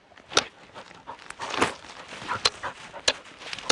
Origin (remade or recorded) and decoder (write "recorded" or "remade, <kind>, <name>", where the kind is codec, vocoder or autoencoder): recorded